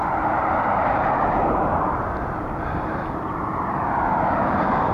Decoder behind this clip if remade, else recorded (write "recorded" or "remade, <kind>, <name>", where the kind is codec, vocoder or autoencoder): remade, vocoder, BigVGAN v2